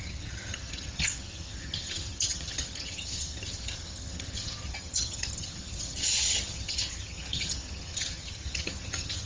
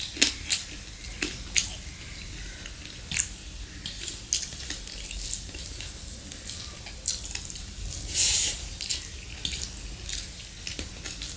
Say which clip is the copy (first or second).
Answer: first